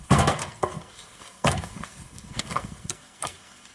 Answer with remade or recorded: remade